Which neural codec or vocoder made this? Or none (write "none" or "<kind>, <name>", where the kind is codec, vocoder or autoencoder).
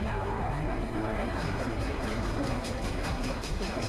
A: codec, SNAC